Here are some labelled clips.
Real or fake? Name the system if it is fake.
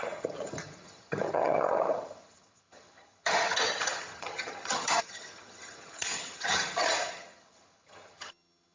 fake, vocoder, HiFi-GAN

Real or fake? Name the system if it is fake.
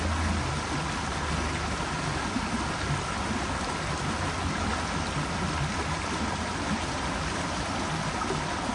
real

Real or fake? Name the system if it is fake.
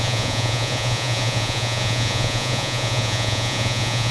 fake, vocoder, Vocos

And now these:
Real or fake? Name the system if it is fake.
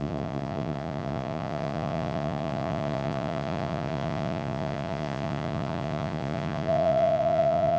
fake, vocoder, Vocos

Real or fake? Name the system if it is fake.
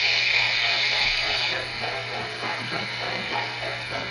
fake, codec, SNAC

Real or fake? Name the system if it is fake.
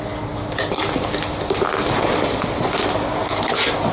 real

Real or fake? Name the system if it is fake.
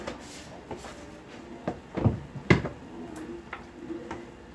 real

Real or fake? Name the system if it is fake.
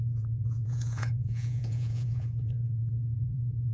fake, vocoder, Vocos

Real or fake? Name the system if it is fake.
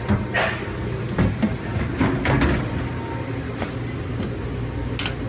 real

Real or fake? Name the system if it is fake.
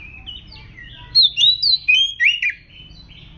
real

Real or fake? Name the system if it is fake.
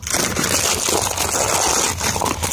real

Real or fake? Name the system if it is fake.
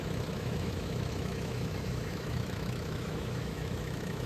fake, autoencoder, DAC-VAE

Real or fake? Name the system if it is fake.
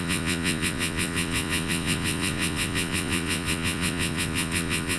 fake, vocoder, Vocos